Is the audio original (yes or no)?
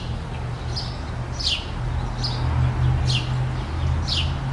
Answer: yes